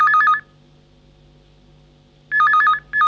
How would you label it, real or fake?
real